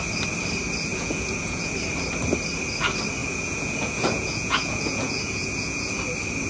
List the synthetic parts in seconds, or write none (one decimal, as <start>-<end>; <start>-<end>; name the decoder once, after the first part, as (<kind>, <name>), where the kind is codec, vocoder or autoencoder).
0.9-1.7 (vocoder, Vocos); 3.2-6.0